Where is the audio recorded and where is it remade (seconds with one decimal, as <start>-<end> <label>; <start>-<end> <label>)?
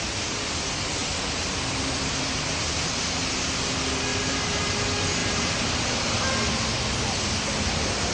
0.0-1.0 recorded; 1.0-3.0 remade; 3.0-4.1 recorded; 4.1-4.7 remade; 4.7-5.2 recorded; 5.2-6.0 remade; 6.0-8.1 recorded